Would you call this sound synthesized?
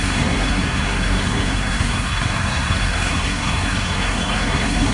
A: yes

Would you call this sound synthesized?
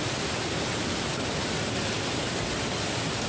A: no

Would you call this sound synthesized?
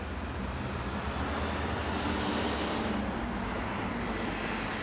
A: no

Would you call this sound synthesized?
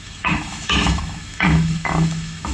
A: yes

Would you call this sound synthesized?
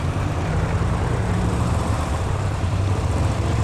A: yes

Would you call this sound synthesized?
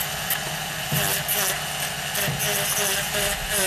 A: no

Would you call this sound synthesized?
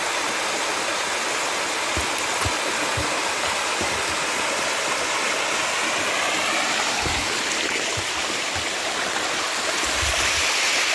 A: no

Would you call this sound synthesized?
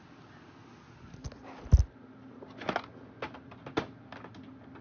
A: no